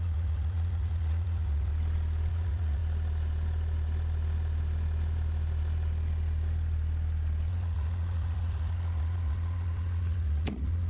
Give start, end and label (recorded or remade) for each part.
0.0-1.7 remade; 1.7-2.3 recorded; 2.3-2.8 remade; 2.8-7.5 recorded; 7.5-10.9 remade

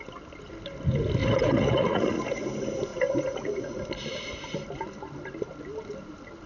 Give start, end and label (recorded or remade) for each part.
0.0-1.2 recorded; 1.2-2.4 remade; 2.4-2.9 recorded; 2.9-3.8 remade; 3.8-6.5 recorded

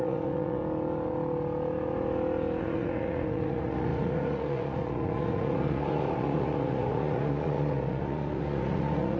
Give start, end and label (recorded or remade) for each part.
0.0-0.6 remade; 0.6-2.6 recorded; 2.6-9.2 remade

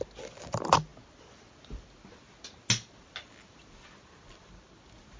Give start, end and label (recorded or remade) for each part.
0.0-5.2 recorded

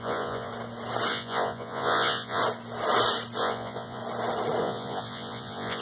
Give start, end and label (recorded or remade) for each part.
0.0-0.5 remade; 0.5-1.1 recorded; 1.1-2.4 remade; 2.4-3.4 recorded; 3.4-4.0 remade; 4.0-4.6 recorded; 4.6-5.8 remade

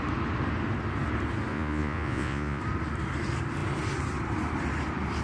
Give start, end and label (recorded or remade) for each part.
0.0-1.5 recorded; 1.5-2.6 remade; 2.6-5.2 recorded

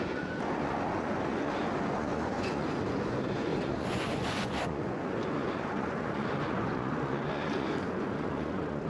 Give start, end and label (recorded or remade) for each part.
0.0-8.9 remade